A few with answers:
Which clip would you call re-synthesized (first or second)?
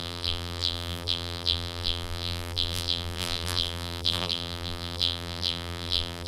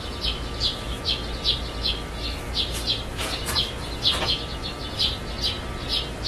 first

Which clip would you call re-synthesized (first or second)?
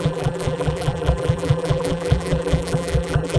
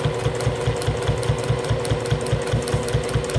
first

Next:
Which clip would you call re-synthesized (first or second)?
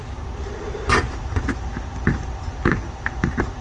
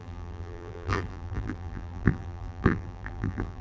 second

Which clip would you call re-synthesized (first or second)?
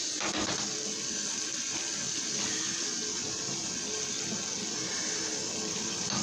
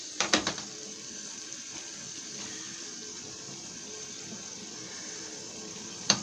second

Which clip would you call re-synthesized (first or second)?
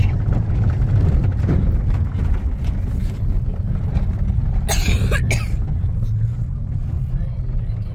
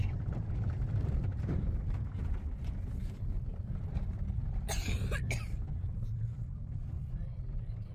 second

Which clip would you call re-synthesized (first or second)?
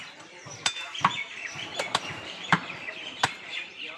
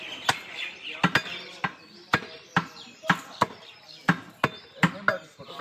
first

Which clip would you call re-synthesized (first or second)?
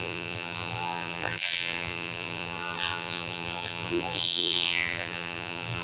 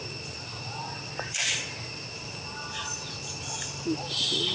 first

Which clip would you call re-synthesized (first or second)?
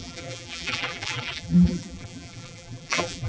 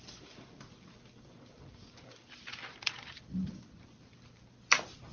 first